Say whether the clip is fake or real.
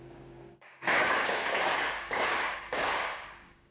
fake